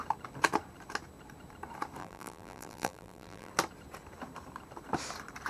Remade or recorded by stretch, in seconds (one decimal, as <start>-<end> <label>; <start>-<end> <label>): 0.0-2.0 recorded; 2.0-3.5 remade; 3.5-5.5 recorded